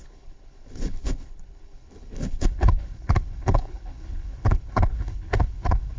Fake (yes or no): yes